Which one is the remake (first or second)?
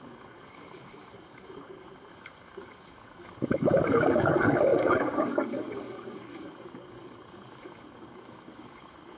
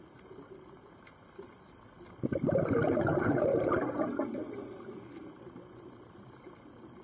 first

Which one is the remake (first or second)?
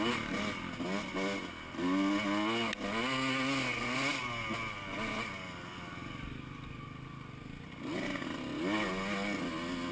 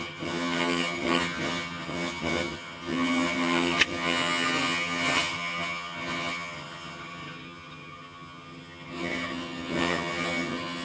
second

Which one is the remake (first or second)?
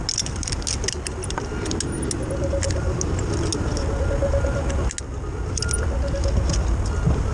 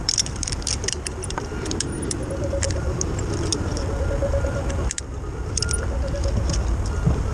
second